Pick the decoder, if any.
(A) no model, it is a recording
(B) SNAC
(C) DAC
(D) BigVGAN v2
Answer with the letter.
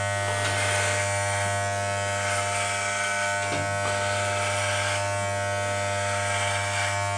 A